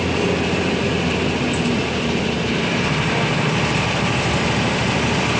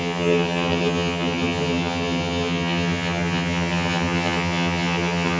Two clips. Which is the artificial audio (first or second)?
second